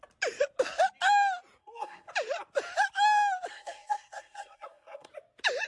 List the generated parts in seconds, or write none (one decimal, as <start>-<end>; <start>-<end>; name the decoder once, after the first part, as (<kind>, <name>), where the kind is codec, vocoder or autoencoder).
1.6-2.1 (codec, SNAC); 3.5-5.1